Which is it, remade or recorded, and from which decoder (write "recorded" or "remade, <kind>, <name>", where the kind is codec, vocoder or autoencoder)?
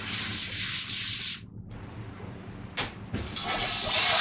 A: remade, vocoder, BigVGAN v2